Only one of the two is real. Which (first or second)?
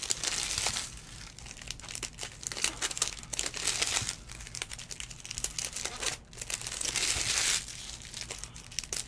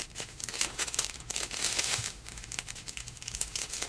first